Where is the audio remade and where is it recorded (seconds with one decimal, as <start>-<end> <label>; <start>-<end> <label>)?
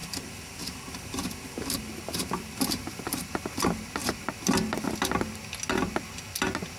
0.0-3.6 remade; 3.6-6.8 recorded